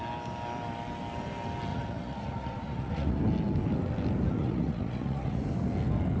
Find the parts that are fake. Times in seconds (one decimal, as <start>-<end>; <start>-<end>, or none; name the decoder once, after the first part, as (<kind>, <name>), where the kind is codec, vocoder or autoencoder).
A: 1.7-3.2 (vocoder, Vocos); 4.4-5.4